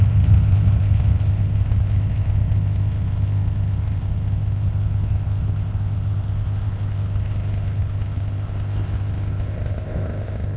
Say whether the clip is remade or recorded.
remade